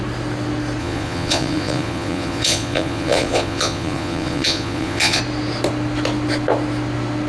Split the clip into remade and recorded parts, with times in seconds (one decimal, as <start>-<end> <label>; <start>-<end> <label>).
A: 0.0-0.8 recorded; 0.8-5.2 remade; 5.2-7.3 recorded